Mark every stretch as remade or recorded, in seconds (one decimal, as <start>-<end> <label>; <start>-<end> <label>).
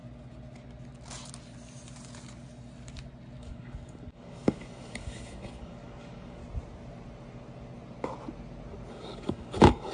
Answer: 0.0-3.4 recorded; 3.4-6.4 remade; 6.4-8.9 recorded; 8.9-9.9 remade